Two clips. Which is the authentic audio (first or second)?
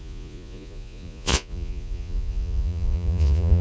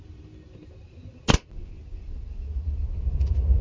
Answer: second